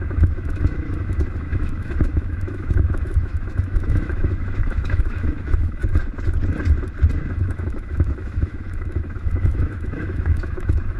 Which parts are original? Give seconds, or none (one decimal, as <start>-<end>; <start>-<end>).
5.8-7.3